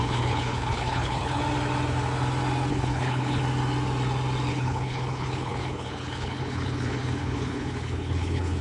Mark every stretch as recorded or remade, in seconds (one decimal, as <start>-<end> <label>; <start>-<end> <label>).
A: 0.0-1.4 remade; 1.4-2.7 recorded; 2.7-3.4 remade; 3.4-4.5 recorded; 4.5-8.6 remade